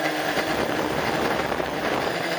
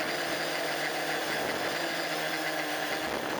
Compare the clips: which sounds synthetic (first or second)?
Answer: first